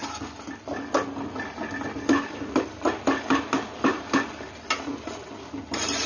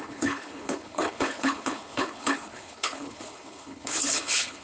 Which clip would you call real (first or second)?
first